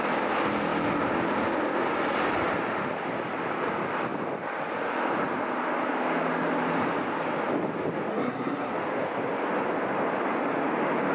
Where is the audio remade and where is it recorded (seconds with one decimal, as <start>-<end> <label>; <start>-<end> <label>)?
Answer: 0.0-8.1 recorded; 8.1-8.7 remade; 8.7-11.1 recorded

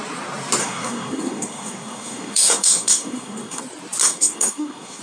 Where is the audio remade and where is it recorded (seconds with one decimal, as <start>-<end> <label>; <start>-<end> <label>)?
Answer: 0.0-0.6 recorded; 0.6-3.6 remade; 3.6-4.0 recorded; 4.0-5.0 remade

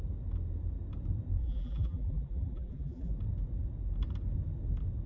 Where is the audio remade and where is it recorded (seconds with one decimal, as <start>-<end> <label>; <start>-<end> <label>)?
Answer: 0.0-1.4 recorded; 1.4-3.1 remade; 3.1-5.1 recorded